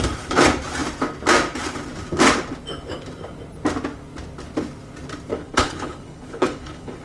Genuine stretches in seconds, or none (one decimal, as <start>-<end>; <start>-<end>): 0.0-5.3